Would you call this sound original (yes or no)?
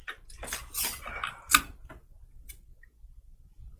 yes